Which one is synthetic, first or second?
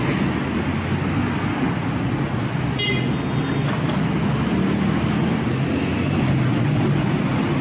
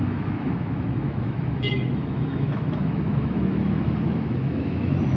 second